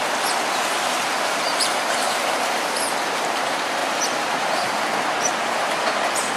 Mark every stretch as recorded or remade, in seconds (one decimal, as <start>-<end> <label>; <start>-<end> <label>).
0.0-0.9 recorded; 0.9-6.4 remade

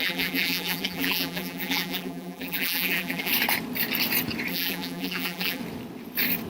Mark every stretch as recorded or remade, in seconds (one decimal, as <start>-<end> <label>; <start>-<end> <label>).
0.0-3.3 remade; 3.3-4.5 recorded; 4.5-5.6 remade; 5.6-6.5 recorded

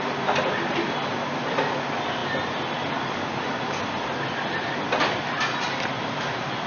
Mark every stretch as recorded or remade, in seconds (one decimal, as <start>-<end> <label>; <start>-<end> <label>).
0.0-6.7 recorded

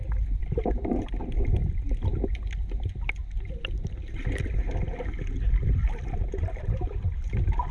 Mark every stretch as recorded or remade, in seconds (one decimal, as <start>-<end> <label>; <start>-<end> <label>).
0.0-0.4 recorded; 0.4-1.7 remade; 1.7-5.8 recorded; 5.8-7.3 remade; 7.3-7.7 recorded